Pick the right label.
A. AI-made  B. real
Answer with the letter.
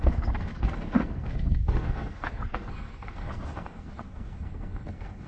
A